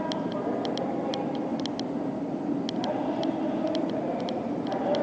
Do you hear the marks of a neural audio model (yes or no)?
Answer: no